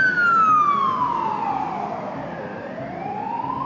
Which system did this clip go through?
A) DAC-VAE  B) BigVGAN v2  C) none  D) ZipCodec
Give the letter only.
C